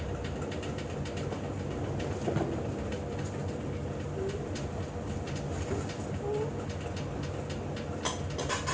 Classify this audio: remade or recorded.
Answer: recorded